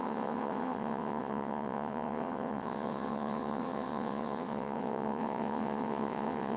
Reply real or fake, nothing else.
fake